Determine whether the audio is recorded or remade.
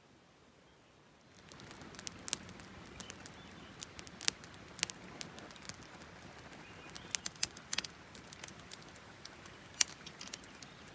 recorded